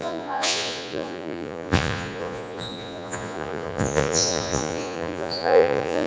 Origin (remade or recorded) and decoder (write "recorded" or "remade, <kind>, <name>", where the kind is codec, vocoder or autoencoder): remade, vocoder, Vocos